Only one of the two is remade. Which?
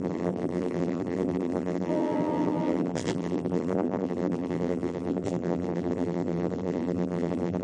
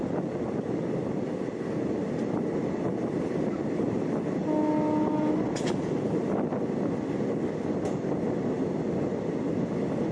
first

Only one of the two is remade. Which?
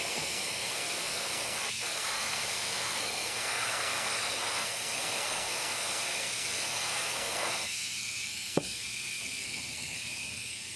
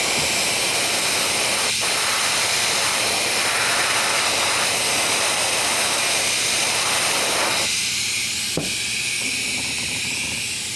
first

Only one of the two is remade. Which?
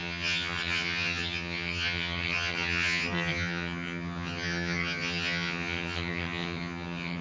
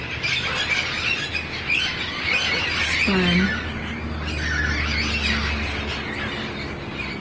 first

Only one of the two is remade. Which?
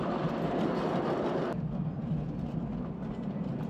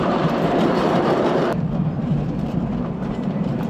second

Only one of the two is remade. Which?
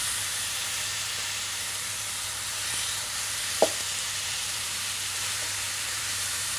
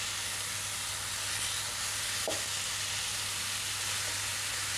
first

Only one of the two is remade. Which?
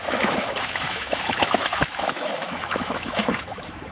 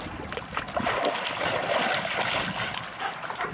first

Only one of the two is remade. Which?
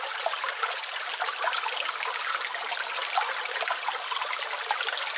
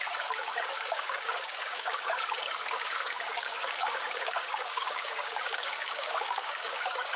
second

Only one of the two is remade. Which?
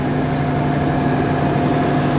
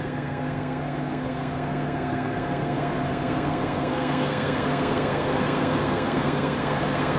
second